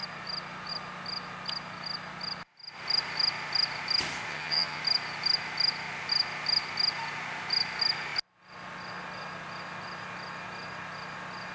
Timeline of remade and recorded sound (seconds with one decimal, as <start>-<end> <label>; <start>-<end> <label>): 0.0-4.3 recorded; 4.3-4.8 remade; 4.8-11.5 recorded